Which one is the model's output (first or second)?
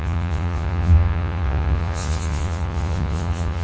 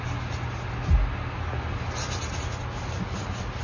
first